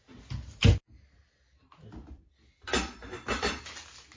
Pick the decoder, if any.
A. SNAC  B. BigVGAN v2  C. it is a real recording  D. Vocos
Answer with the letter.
C